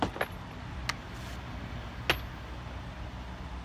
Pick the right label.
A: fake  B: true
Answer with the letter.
B